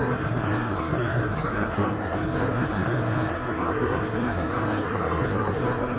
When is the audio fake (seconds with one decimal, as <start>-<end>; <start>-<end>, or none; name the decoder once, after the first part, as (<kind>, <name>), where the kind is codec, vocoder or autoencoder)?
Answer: 0.0-6.0 (codec, SNAC)